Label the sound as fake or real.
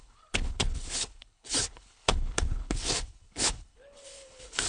fake